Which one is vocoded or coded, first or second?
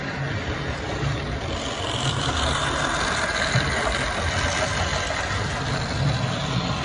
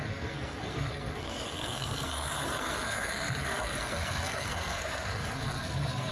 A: second